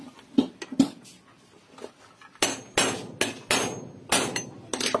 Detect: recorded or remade recorded